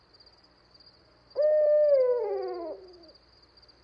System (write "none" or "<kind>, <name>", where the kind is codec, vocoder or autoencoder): none